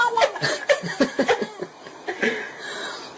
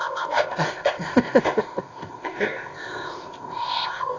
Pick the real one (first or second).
first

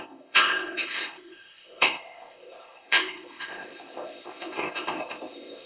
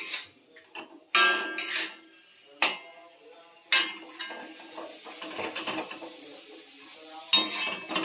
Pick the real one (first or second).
second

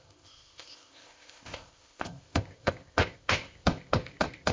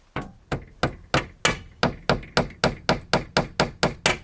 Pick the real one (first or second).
second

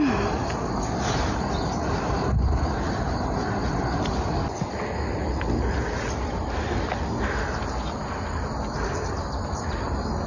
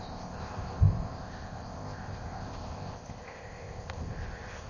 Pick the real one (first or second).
first